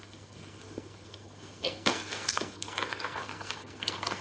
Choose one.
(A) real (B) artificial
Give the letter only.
B